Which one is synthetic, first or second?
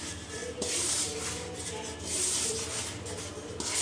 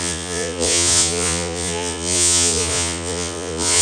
second